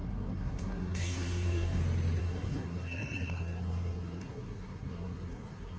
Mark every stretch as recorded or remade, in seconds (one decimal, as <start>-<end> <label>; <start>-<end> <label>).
0.0-1.8 remade; 1.8-2.2 recorded; 2.2-5.8 remade